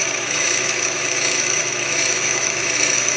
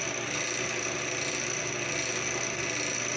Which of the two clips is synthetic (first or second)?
first